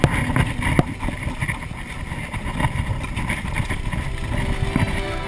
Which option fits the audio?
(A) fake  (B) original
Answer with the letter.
B